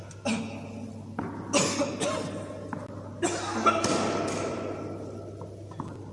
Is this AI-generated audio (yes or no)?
no